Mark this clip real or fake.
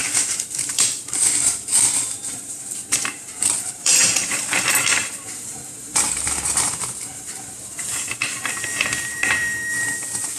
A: fake